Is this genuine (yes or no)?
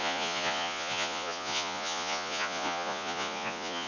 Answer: no